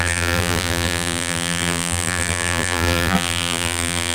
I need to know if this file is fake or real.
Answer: fake